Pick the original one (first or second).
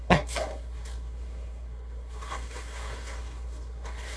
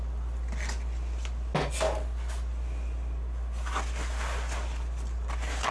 second